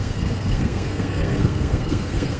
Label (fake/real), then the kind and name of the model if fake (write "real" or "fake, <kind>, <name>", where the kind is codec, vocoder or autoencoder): fake, codec, SNAC